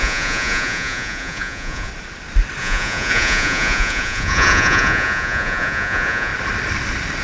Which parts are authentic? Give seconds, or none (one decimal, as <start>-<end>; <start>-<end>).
1.9-2.6; 6.3-7.2